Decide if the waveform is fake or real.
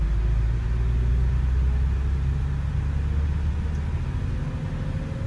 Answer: real